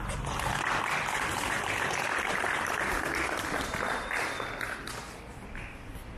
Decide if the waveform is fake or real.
fake